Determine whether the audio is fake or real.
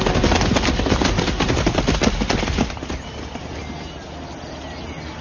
real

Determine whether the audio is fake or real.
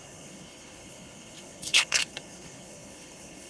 fake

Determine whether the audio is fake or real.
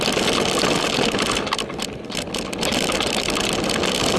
real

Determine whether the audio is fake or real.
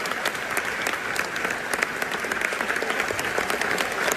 real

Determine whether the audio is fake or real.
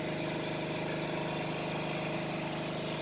real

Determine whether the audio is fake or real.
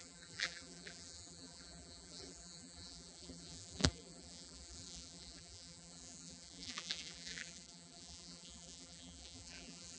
fake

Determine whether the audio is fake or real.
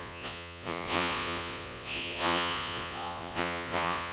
fake